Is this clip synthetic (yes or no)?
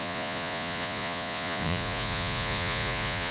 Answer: yes